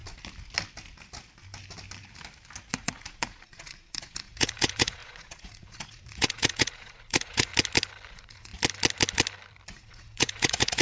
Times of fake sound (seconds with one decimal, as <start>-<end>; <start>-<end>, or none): 2.7-7.5; 8.1-8.5; 9.7-10.8